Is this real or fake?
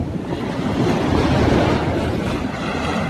real